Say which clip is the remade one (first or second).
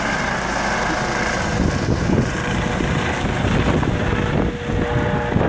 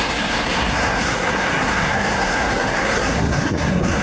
second